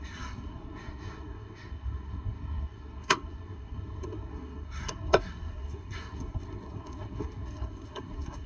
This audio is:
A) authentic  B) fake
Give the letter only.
B